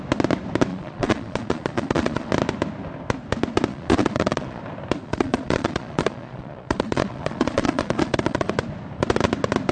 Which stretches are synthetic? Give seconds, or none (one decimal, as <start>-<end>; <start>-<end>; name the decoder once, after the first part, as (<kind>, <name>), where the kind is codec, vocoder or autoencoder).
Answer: 0.7-2.3 (vocoder, Vocos); 3.7-4.6; 5.0-8.5